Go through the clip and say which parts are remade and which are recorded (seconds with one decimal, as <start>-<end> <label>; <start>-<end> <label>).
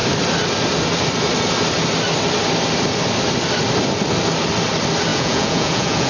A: 0.0-5.1 recorded; 5.1-6.1 remade